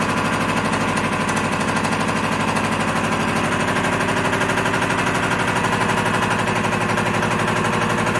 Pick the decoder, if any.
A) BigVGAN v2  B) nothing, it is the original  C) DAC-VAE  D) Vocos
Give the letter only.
B